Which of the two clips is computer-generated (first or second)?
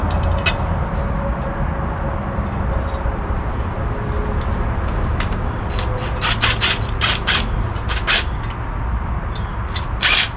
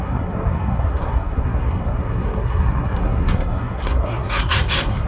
second